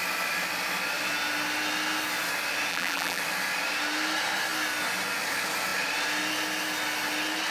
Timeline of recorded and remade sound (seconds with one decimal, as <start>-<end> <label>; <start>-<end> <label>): 0.0-2.7 recorded; 2.7-3.2 remade; 3.2-7.5 recorded